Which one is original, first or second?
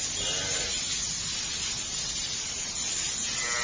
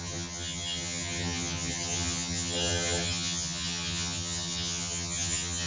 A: first